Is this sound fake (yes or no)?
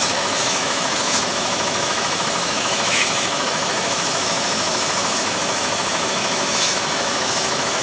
yes